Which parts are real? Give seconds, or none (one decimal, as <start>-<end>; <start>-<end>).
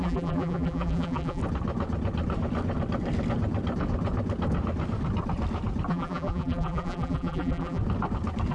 1.4-5.9; 7.8-8.5